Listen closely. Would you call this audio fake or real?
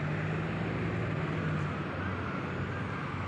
real